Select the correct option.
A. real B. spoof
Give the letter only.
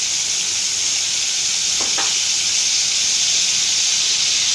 A